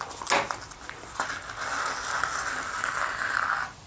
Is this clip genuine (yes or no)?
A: yes